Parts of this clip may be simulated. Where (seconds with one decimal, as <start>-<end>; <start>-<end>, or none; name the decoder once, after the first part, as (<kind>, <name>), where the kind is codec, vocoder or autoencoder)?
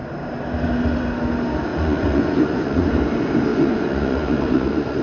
1.7-2.9 (vocoder, Vocos); 3.5-5.0